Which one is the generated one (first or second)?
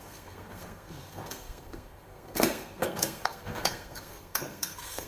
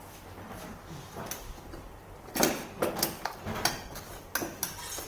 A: first